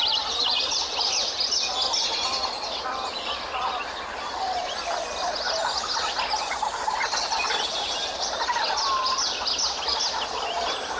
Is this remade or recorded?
recorded